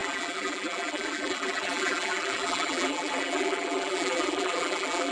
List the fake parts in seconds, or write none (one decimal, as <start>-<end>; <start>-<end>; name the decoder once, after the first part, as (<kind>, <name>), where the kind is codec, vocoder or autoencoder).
0.0-5.1 (vocoder, BigVGAN v2)